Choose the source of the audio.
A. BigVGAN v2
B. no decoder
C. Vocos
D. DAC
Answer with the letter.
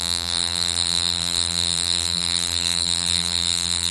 A